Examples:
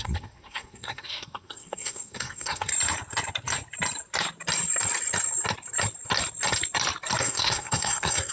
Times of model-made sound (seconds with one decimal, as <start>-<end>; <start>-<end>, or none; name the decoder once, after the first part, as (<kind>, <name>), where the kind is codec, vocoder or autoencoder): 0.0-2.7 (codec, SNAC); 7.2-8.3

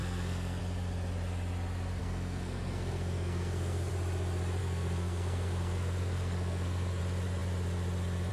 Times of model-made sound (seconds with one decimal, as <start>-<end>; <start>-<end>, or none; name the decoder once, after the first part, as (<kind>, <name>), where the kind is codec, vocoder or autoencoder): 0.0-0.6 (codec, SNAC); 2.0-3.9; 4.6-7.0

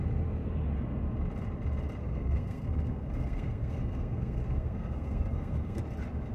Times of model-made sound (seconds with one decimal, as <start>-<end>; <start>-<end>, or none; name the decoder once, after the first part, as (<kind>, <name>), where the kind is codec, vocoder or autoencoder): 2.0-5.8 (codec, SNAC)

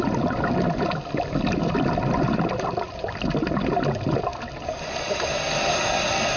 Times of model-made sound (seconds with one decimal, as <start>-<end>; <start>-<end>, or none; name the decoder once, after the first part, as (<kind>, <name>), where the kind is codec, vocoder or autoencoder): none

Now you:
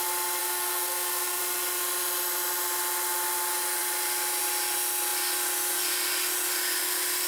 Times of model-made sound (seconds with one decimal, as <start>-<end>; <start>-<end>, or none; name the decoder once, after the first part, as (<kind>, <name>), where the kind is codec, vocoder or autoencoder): 0.4-1.4 (codec, SNAC)